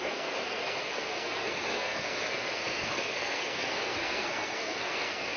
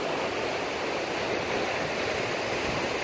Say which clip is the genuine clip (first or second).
second